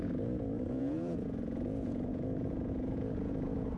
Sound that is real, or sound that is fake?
fake